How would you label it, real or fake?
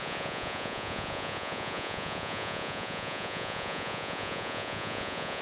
fake